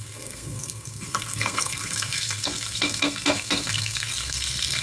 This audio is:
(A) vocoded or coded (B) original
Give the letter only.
A